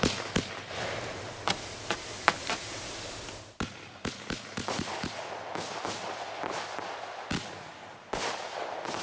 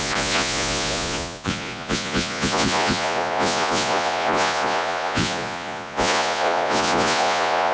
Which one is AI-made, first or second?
second